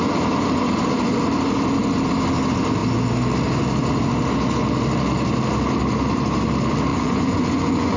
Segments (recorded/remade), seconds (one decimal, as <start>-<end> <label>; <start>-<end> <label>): 0.0-6.9 recorded; 6.9-8.0 remade